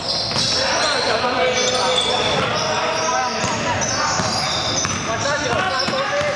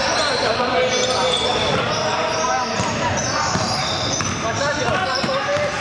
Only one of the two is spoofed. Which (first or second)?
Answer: second